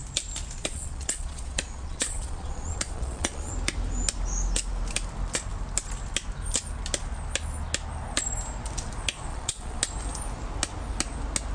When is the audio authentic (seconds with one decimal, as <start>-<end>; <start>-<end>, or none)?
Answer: 0.0-0.6; 3.5-9.3; 9.8-11.5